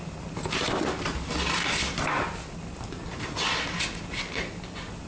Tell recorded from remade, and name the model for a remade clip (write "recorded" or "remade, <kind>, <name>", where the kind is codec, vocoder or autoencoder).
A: recorded